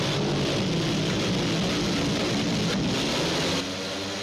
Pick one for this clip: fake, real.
real